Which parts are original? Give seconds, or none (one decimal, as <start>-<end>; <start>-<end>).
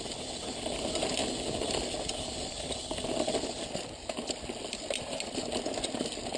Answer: 0.0-6.4